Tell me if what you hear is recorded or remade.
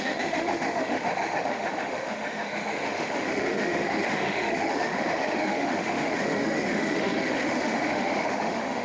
remade